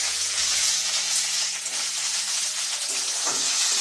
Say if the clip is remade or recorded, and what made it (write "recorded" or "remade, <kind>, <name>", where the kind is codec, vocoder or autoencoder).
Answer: remade, vocoder, Vocos